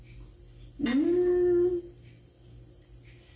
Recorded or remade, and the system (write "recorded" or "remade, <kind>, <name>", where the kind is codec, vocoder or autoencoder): recorded